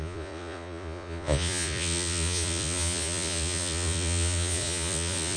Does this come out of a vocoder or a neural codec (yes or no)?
yes